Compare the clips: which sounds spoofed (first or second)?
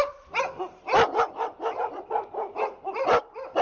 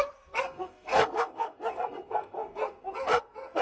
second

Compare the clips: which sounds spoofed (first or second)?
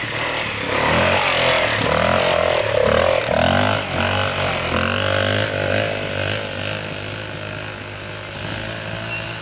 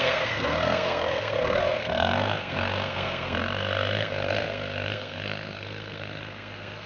second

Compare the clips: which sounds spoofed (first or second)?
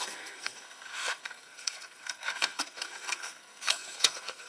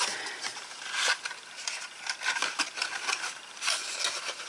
first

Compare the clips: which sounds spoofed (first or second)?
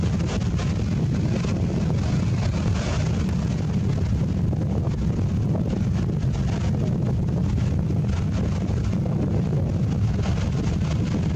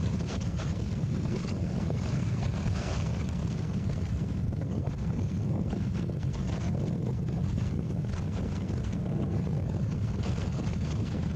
second